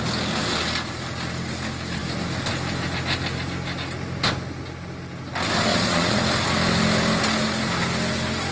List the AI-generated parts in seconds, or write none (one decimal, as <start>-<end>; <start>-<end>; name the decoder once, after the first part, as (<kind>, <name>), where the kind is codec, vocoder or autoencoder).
5.7-6.2 (vocoder, Vocos)

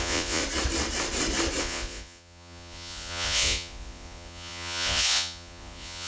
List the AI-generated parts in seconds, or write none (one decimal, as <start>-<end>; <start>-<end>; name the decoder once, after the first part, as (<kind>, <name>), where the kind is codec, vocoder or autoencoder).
0.0-0.4 (vocoder, Vocos); 1.6-6.1

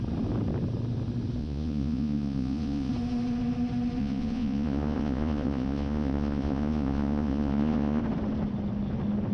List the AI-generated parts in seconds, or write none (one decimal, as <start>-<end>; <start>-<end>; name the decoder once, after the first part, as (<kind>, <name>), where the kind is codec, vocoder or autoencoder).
1.4-2.9 (vocoder, Vocos); 4.0-8.0

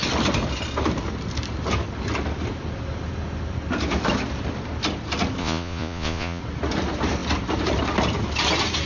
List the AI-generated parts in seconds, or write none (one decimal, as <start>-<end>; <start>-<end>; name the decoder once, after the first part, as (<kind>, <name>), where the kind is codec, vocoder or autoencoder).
5.4-6.4 (vocoder, Vocos)

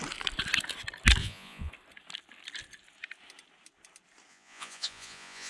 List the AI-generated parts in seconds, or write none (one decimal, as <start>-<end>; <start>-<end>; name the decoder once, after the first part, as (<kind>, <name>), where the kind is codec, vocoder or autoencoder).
1.2-1.7 (vocoder, Vocos); 4.3-5.5